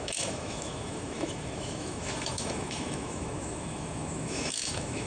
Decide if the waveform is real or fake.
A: fake